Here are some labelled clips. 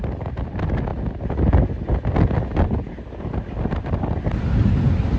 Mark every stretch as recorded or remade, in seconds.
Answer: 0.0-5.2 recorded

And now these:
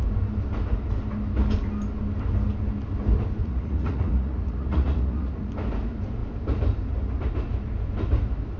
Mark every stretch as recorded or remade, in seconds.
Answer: 0.0-3.4 recorded; 3.4-5.5 remade; 5.5-8.6 recorded

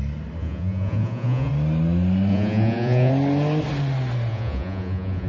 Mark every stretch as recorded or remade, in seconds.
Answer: 0.0-0.4 recorded; 0.4-1.5 remade; 1.5-2.3 recorded; 2.3-3.1 remade; 3.1-4.3 recorded; 4.3-5.3 remade